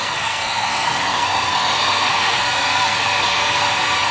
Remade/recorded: remade